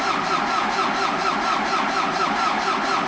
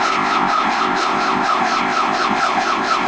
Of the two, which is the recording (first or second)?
first